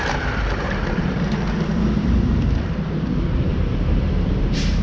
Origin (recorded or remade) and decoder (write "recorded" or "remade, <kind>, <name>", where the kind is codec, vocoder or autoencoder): remade, vocoder, BigVGAN v2